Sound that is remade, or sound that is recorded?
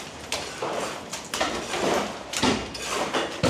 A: recorded